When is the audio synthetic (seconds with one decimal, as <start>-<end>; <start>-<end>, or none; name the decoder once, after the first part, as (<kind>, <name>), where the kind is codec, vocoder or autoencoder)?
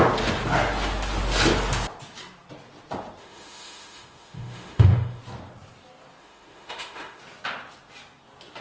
3.2-5.2 (autoencoder, DAC-VAE); 6.2-7.2